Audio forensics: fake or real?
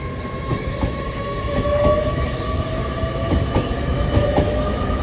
fake